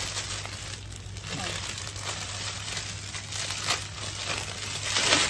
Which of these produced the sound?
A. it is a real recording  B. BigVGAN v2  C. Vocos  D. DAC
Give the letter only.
A